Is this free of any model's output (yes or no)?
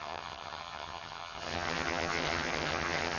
no